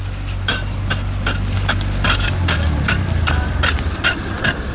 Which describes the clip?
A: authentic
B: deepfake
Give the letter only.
A